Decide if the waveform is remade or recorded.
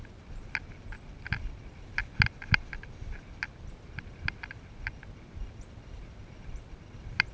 recorded